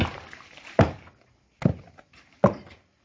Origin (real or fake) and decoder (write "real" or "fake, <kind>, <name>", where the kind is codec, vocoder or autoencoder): real